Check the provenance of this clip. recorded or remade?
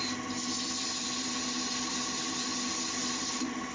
recorded